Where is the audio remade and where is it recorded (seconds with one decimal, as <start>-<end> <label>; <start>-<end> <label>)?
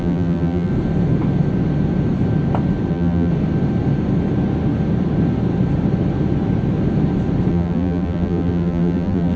0.0-0.7 remade; 0.7-2.9 recorded; 2.9-3.3 remade; 3.3-7.5 recorded; 7.5-9.4 remade